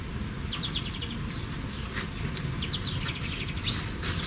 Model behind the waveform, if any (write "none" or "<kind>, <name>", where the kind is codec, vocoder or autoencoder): none